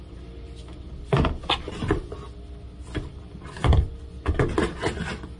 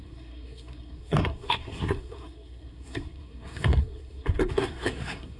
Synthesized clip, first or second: second